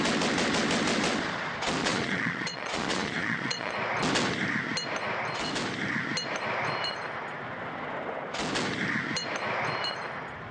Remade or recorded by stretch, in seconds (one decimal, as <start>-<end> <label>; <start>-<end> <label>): 0.0-1.8 recorded; 1.8-3.7 remade; 3.7-10.5 recorded